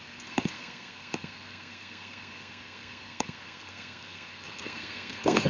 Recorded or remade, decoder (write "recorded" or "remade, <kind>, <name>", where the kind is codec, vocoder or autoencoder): remade, codec, SNAC